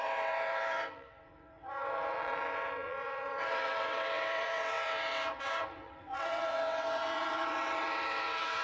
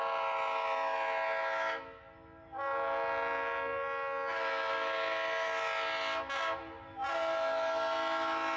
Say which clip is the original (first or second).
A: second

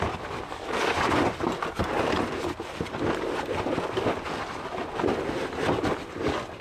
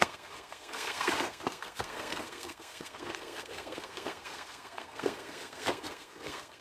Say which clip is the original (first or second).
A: first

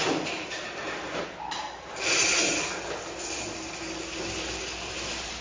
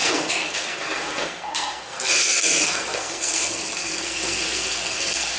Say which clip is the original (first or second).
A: first